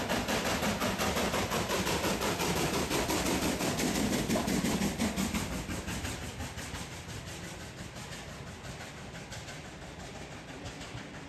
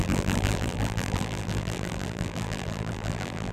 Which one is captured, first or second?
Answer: first